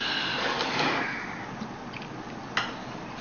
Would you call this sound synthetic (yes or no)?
no